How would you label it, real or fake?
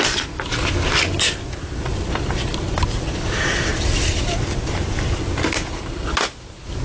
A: real